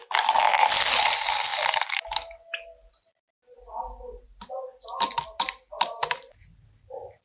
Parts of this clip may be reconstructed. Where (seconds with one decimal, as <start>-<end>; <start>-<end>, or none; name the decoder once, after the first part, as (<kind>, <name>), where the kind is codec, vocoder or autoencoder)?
none